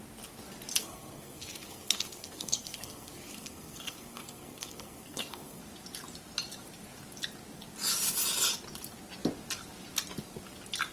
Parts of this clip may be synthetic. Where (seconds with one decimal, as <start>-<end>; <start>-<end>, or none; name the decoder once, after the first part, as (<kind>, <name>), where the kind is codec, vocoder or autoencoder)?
0.8-5.6 (codec, SNAC)